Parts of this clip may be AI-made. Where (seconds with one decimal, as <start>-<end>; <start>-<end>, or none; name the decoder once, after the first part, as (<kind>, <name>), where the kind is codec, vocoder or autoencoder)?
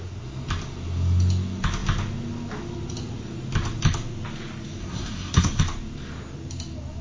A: 4.8-5.6 (codec, SNAC)